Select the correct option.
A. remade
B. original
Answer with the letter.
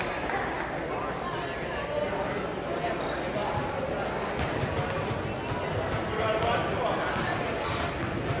B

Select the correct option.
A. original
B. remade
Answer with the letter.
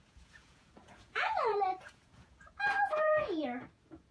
B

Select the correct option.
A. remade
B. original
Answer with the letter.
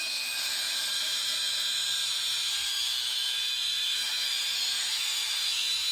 A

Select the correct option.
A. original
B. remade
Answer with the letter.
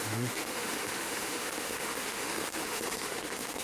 B